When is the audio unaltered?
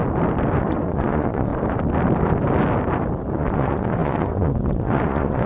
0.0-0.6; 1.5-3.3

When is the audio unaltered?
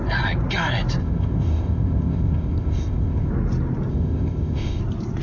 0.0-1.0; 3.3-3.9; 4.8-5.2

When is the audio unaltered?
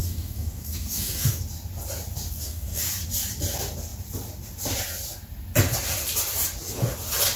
1.4-2.4; 2.9-7.4